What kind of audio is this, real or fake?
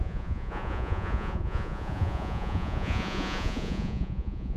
fake